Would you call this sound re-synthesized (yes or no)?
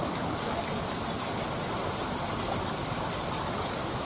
yes